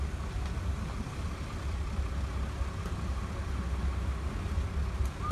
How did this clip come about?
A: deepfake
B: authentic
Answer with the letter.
B